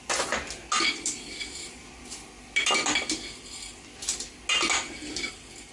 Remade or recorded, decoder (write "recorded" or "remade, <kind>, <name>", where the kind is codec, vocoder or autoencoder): recorded